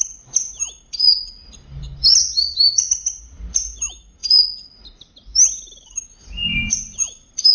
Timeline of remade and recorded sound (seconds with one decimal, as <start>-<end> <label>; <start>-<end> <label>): 0.0-6.5 recorded; 6.5-7.5 remade